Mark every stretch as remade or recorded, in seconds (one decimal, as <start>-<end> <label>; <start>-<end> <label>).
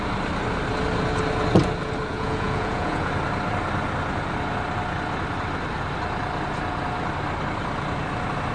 0.0-2.1 recorded; 2.1-3.1 remade; 3.1-8.5 recorded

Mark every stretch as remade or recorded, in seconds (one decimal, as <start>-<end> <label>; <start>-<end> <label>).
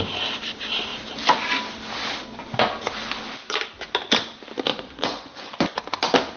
0.0-4.7 recorded; 4.7-5.8 remade; 5.8-6.4 recorded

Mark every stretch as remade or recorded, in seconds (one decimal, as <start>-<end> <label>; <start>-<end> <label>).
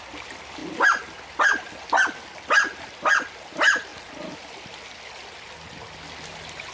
0.0-6.7 recorded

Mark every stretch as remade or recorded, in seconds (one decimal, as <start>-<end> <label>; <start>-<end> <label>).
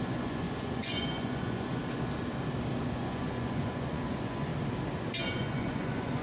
0.0-1.8 remade; 1.8-2.8 recorded; 2.8-4.5 remade; 4.5-5.2 recorded; 5.2-6.2 remade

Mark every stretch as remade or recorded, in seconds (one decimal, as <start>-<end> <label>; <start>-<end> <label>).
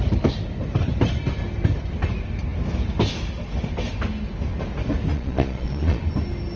0.0-5.1 recorded; 5.1-6.0 remade; 6.0-6.6 recorded